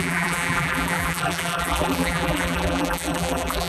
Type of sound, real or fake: fake